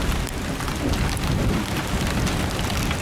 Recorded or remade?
recorded